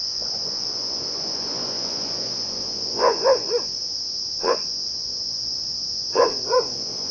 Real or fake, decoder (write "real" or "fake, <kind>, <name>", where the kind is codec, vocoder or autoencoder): fake, vocoder, Vocos